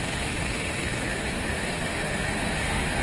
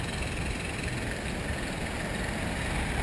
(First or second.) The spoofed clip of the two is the first